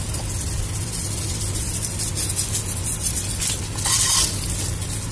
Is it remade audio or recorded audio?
recorded